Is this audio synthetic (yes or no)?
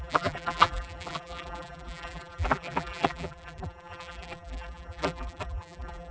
yes